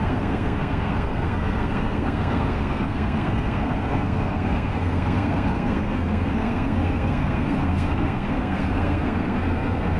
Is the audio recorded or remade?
remade